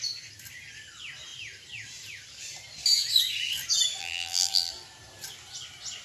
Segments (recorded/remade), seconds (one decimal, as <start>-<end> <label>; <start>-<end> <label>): 0.0-4.0 recorded; 4.0-4.7 remade; 4.7-6.0 recorded